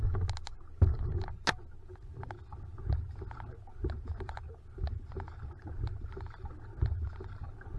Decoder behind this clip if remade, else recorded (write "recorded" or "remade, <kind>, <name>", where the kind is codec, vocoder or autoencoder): recorded